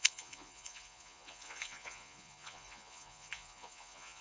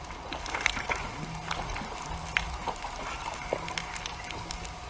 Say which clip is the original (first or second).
second